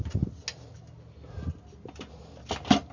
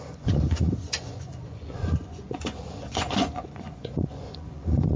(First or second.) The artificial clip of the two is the second